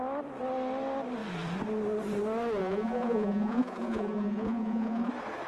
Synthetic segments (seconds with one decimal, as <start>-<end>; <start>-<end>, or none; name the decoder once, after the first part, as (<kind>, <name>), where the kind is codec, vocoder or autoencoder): 2.6-5.1 (vocoder, Vocos)